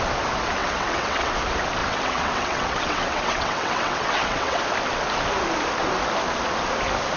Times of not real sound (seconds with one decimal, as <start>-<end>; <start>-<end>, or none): 0.6-1.3; 1.8-4.6